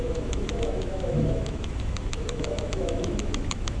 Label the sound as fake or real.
fake